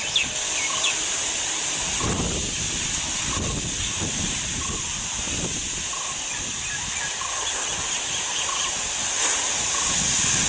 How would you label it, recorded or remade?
recorded